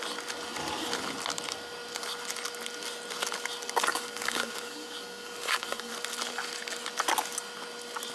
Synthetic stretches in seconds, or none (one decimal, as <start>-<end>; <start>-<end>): 3.9-5.9